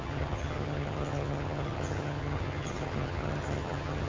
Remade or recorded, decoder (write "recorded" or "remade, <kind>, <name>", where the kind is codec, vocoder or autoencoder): remade, vocoder, HiFi-GAN